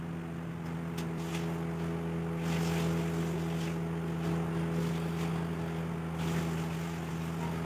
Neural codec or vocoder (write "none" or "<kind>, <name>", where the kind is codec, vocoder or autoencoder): none